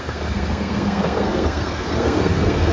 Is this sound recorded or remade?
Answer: remade